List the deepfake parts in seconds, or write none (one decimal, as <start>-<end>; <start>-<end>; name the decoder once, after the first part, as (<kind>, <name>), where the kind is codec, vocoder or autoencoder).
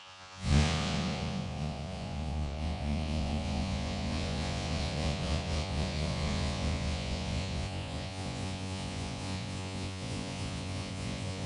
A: 0.0-11.5 (vocoder, Vocos)